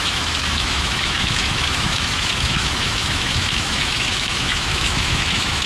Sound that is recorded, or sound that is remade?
remade